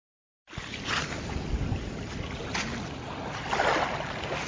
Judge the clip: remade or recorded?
recorded